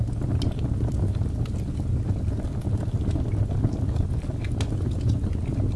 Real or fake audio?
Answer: real